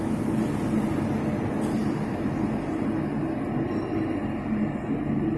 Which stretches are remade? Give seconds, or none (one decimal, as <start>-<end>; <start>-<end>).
none